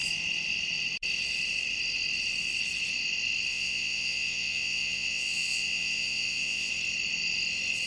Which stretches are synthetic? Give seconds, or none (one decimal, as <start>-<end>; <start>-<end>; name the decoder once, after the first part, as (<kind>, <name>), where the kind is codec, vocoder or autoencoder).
3.5-6.7 (vocoder, WaveNeXt)